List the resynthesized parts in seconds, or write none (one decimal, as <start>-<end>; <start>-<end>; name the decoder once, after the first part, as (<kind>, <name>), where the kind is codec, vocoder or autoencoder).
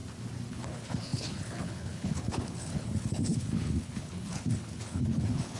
0.5-5.6 (codec, HILCodec)